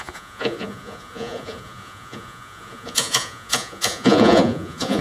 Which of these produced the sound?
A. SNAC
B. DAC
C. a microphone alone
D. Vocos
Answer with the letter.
D